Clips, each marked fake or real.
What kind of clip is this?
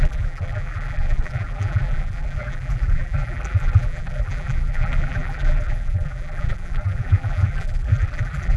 fake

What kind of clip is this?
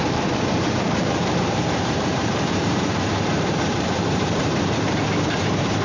fake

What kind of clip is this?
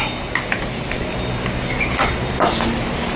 real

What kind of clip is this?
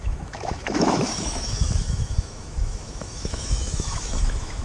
fake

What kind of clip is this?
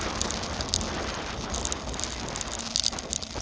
real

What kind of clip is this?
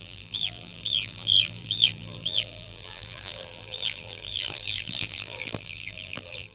fake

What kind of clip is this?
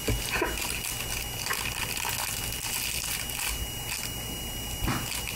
real